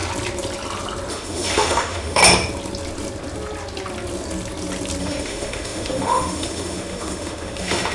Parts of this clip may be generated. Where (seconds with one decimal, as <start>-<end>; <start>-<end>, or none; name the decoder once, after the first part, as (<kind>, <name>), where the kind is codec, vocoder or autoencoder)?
1.1-2.2 (autoencoder, DAC-VAE); 5.0-7.9